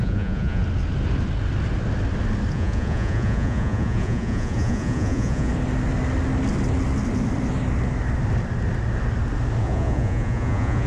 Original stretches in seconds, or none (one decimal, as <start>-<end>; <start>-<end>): 0.6-2.5; 5.5-9.6